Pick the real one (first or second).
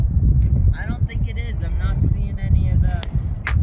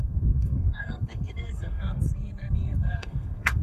first